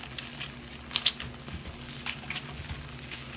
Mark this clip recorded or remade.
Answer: recorded